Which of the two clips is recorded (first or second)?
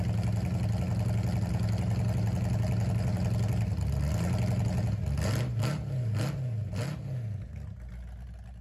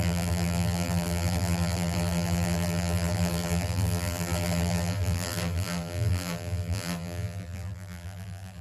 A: first